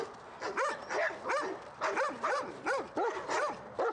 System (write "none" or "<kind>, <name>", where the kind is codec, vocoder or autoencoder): none